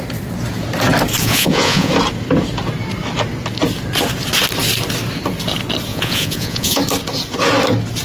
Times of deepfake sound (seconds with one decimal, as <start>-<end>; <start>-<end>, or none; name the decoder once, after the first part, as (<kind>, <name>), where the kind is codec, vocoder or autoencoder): 1.2-1.9 (vocoder, Vocos); 5.9-6.8